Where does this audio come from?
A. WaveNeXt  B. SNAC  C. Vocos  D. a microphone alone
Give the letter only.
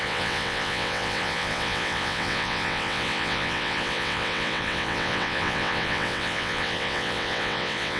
A